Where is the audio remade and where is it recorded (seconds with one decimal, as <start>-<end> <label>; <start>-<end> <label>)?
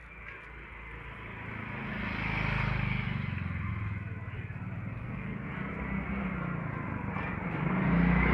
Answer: 0.0-5.0 recorded; 5.0-5.5 remade; 5.5-8.3 recorded